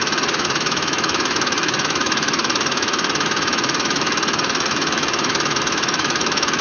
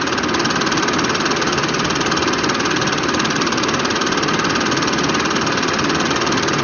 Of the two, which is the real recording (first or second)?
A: second